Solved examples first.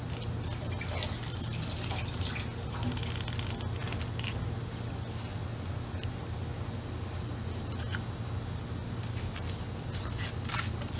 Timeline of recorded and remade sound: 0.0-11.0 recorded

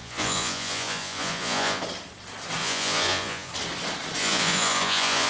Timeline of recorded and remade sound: 0.0-1.8 remade; 1.8-2.6 recorded; 2.6-3.5 remade; 3.5-4.2 recorded; 4.2-5.3 remade

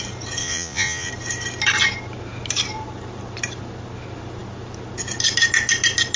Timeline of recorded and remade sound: 0.0-0.4 recorded; 0.4-1.1 remade; 1.1-6.2 recorded

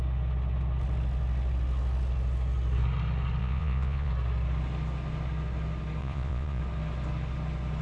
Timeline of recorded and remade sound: 0.0-3.4 recorded; 3.4-4.1 remade; 4.1-6.0 recorded; 6.0-6.6 remade; 6.6-7.8 recorded

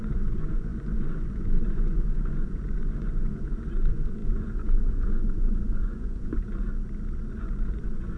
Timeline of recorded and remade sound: 0.0-6.7 remade; 6.7-7.4 recorded; 7.4-8.2 remade